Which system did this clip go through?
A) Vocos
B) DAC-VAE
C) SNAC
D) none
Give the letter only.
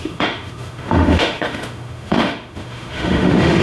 B